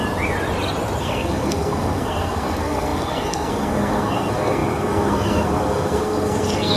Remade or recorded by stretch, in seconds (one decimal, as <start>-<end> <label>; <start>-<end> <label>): 0.0-1.0 recorded; 1.0-6.8 remade